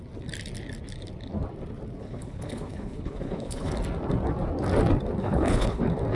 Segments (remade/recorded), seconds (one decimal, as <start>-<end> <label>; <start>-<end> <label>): 0.0-2.0 recorded; 2.0-3.7 remade; 3.7-5.2 recorded; 5.2-5.8 remade; 5.8-6.2 recorded